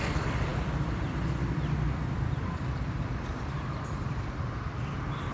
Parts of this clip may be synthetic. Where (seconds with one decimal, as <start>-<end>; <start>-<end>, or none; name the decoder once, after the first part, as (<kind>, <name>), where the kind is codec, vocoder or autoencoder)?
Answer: 0.5-3.7 (vocoder, BigVGAN v2)